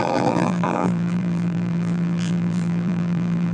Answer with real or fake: fake